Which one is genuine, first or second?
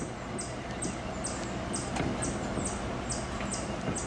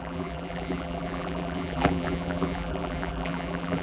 first